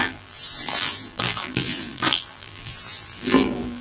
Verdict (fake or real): fake